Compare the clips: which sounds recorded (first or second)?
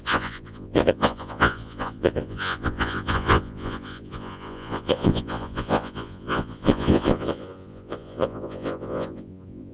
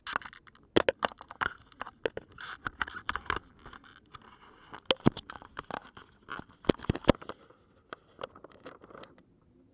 second